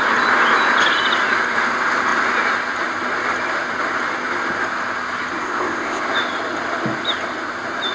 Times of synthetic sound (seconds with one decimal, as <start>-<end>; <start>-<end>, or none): 5.4-6.0